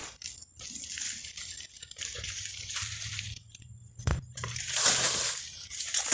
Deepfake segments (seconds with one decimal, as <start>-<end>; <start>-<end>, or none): 2.1-6.1